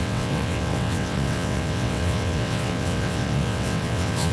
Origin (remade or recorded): remade